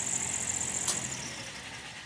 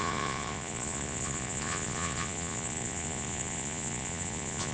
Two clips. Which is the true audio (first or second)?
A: first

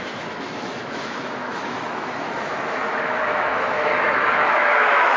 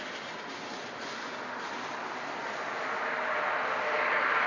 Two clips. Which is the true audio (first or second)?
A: second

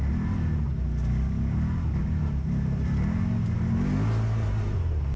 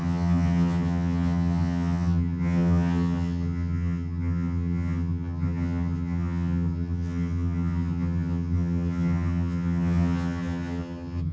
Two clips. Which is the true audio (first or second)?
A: first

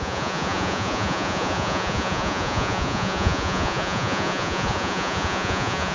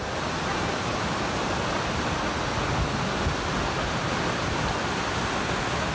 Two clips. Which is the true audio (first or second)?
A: second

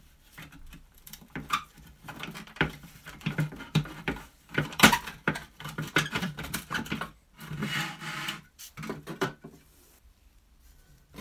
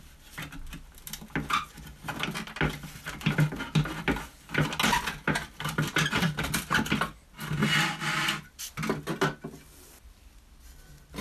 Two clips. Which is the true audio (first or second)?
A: second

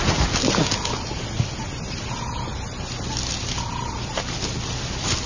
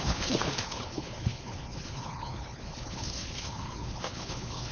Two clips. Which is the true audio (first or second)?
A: first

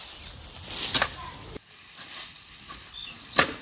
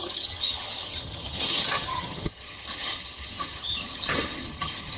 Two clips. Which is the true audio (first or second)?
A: first